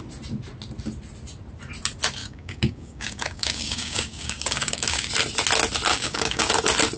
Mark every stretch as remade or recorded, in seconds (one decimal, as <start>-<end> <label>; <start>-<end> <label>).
0.0-2.2 recorded; 2.2-5.1 remade; 5.1-5.9 recorded; 5.9-6.5 remade; 6.5-7.0 recorded